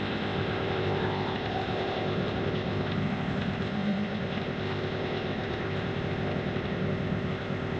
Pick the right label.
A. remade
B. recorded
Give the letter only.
A